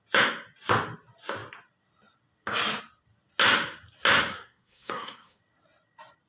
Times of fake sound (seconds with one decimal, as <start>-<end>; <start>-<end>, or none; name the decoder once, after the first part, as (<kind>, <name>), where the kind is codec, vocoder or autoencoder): 4.3-5.4 (codec, SNAC)